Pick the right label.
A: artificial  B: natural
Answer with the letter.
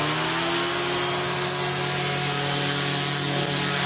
B